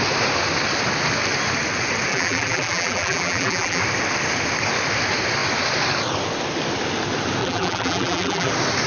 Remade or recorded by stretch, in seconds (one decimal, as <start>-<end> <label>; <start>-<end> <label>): 0.0-2.1 recorded; 2.1-3.8 remade; 3.8-7.4 recorded; 7.4-8.5 remade; 8.5-8.9 recorded